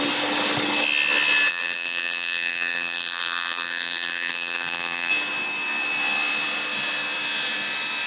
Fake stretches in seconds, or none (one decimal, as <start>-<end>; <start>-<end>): 1.5-5.1

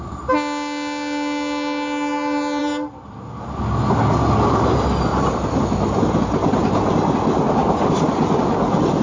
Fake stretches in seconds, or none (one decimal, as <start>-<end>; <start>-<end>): 2.6-3.6; 5.1-5.6; 7.6-8.3

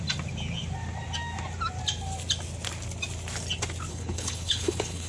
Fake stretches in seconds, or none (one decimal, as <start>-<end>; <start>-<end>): 3.9-5.1

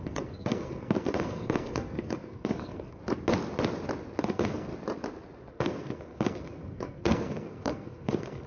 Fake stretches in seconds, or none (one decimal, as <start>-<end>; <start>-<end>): 0.0-3.0; 4.2-4.7; 5.5-8.5

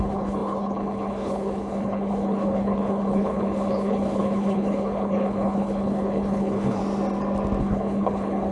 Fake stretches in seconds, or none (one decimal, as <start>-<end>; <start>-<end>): 0.0-6.8; 7.6-8.5

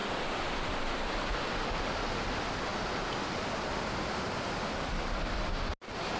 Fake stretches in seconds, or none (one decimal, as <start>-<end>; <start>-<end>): none